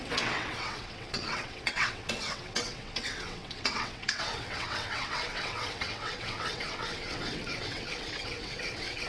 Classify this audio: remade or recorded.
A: remade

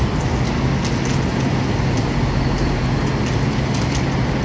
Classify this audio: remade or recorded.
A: recorded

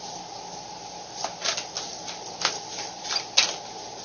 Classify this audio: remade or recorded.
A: recorded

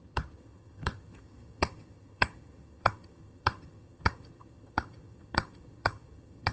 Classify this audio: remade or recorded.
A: remade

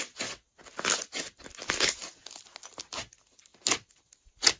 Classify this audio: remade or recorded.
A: recorded